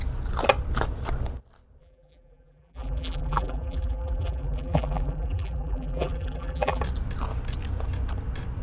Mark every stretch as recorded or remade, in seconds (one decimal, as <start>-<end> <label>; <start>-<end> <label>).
0.0-1.8 recorded; 1.8-6.8 remade; 6.8-8.6 recorded